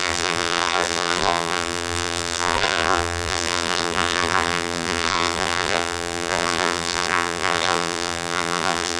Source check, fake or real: fake